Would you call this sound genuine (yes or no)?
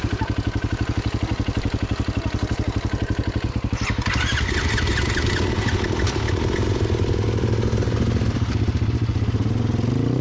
yes